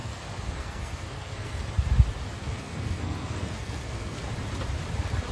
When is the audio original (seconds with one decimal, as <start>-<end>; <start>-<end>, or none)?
1.7-2.4; 4.3-5.3